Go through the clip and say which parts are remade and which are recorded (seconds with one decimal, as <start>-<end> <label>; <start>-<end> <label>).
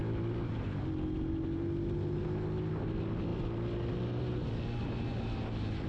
0.0-5.9 recorded